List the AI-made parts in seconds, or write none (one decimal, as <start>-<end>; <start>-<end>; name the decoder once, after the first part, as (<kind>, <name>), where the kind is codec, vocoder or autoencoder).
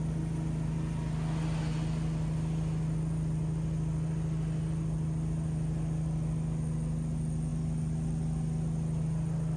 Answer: none